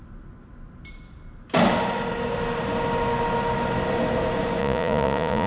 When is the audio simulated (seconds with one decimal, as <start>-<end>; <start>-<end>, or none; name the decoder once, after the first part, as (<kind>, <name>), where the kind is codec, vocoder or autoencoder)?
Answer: 4.6-5.5 (vocoder, Vocos)